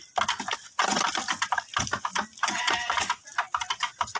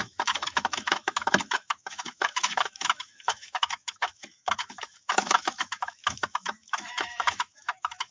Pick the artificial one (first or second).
second